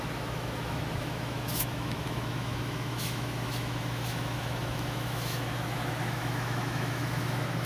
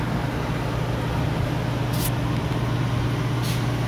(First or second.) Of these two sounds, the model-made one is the first